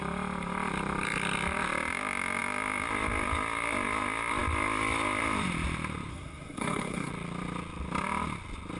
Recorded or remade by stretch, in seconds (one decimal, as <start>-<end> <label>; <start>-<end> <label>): 0.0-6.1 recorded; 6.1-7.1 remade; 7.1-8.8 recorded